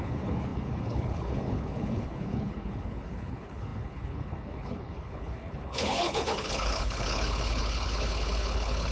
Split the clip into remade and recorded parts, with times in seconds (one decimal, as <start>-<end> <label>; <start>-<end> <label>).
0.0-8.9 remade